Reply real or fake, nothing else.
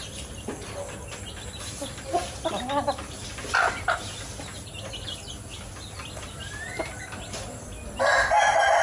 real